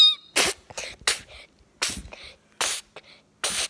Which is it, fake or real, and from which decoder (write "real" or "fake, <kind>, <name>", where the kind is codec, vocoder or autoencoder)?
real